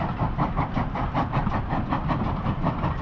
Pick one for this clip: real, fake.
fake